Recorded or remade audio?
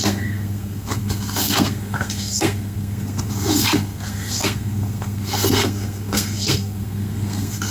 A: remade